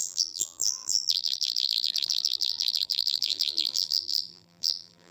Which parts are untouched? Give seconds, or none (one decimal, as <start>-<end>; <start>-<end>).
none